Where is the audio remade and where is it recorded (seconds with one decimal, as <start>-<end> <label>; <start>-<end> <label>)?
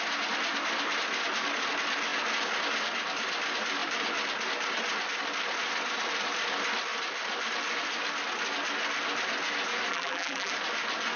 0.0-9.9 recorded; 9.9-10.5 remade; 10.5-11.2 recorded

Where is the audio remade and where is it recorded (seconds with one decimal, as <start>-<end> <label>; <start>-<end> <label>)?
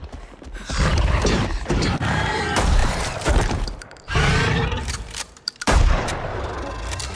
0.0-0.9 recorded; 0.9-2.4 remade; 2.4-2.8 recorded; 2.8-6.7 remade; 6.7-7.2 recorded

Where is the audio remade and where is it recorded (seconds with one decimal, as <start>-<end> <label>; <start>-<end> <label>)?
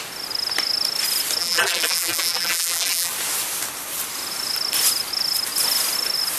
0.0-1.4 recorded; 1.4-3.1 remade; 3.1-6.4 recorded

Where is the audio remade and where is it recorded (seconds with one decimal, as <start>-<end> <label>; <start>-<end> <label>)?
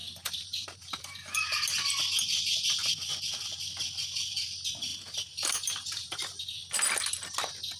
0.0-1.6 remade; 1.6-4.9 recorded; 4.9-6.4 remade; 6.4-7.8 recorded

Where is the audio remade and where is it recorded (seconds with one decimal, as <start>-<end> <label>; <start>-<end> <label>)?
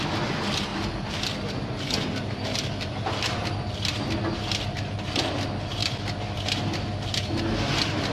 0.0-8.1 recorded